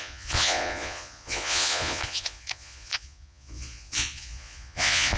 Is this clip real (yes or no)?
no